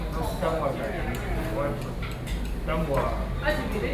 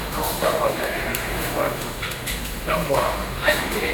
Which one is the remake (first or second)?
second